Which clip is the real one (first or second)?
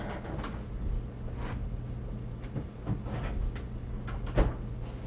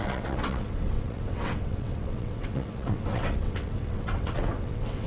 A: first